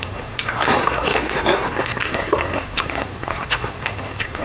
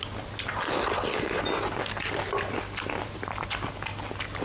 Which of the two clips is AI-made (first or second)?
first